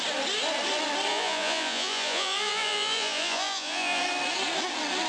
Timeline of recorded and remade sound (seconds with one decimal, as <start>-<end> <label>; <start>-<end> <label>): 0.0-1.1 recorded; 1.1-4.0 remade; 4.0-5.1 recorded